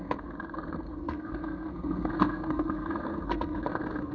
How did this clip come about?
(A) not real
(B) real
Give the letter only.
A